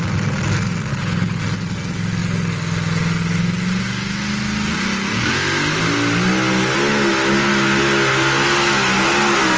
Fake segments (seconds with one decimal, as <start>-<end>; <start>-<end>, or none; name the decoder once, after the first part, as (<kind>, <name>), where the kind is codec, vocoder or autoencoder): 0.9-1.4 (codec, HILCodec)